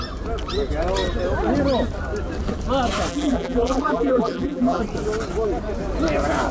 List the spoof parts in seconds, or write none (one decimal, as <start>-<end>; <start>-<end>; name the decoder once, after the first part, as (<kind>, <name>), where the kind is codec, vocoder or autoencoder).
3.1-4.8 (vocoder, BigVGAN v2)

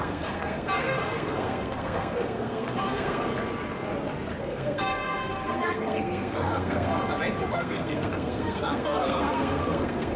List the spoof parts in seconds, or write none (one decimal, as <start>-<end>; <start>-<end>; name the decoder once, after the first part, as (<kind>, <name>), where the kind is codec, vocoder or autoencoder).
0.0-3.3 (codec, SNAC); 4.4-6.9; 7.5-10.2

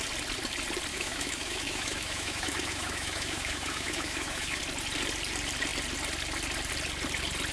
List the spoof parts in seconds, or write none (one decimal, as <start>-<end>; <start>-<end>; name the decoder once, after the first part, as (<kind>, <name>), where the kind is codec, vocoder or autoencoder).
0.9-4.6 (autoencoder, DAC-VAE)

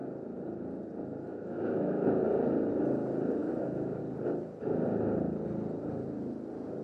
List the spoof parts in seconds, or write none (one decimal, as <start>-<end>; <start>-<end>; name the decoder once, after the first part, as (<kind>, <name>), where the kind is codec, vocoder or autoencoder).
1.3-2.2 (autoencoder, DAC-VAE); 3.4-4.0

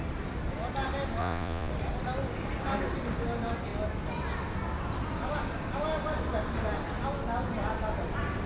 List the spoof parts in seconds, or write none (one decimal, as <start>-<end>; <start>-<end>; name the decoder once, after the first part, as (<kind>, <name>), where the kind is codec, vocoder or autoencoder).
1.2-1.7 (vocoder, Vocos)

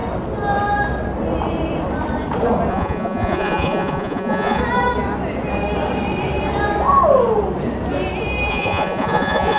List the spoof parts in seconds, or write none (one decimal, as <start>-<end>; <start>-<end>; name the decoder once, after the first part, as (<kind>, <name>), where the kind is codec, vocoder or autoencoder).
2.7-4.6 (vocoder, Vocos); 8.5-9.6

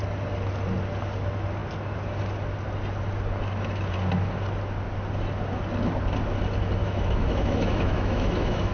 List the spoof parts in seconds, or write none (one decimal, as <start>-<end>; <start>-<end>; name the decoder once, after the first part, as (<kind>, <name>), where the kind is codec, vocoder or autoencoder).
6.8-8.7 (autoencoder, DAC-VAE)